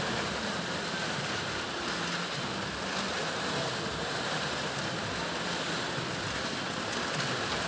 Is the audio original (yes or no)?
yes